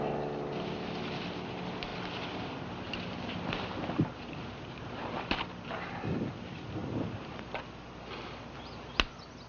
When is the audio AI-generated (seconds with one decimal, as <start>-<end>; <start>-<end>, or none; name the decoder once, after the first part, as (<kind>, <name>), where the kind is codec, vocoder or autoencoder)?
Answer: 1.9-6.2 (vocoder, BigVGAN v2); 6.8-7.7